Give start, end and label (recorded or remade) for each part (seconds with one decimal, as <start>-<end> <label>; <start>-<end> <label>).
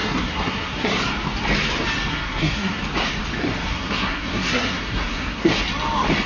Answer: 0.0-1.0 remade; 1.0-2.1 recorded; 2.1-2.8 remade; 2.8-3.4 recorded; 3.4-5.6 remade; 5.6-6.3 recorded